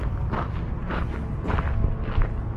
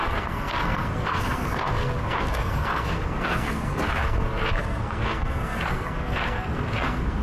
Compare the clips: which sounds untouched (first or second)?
first